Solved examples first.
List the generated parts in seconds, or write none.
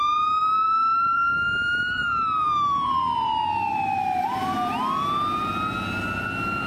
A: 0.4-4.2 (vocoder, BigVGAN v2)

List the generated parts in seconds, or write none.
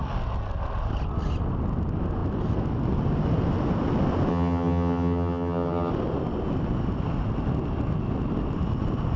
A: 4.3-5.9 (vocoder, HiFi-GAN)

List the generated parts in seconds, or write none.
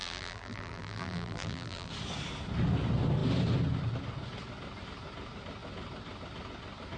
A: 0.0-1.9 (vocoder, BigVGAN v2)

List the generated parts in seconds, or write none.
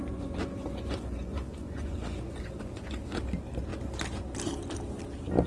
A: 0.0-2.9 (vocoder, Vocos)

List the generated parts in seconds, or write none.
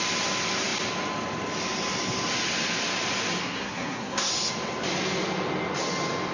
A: 3.4-4.3 (codec, SNAC)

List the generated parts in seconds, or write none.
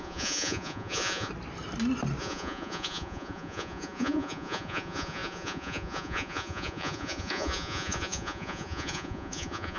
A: 0.0-1.3 (vocoder, Vocos); 2.2-9.8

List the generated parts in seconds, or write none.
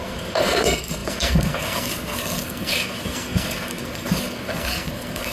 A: 0.0-5.3 (codec, SNAC)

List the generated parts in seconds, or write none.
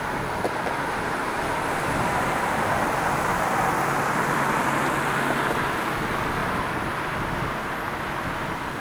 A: 6.4-6.9 (vocoder, BigVGAN v2)